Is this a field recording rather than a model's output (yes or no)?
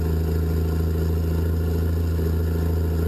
yes